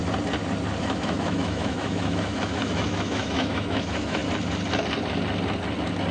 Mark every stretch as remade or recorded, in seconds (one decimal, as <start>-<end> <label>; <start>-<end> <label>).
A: 0.0-0.8 recorded; 0.8-4.2 remade; 4.2-6.1 recorded